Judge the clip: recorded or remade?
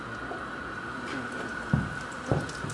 remade